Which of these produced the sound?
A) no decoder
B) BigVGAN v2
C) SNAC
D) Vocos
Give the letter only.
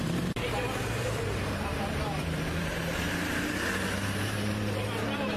B